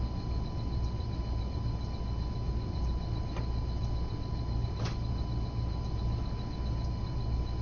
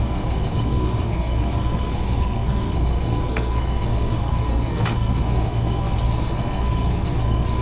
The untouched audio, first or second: first